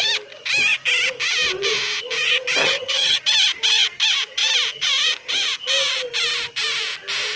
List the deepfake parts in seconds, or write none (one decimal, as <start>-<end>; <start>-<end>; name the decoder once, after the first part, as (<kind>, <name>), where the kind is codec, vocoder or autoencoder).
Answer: 2.6-3.2 (vocoder, HiFi-GAN)